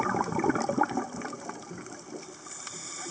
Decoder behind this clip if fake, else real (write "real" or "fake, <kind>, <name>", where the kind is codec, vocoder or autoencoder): real